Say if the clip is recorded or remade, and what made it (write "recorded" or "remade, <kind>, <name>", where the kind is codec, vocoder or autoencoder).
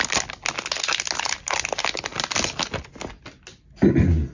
recorded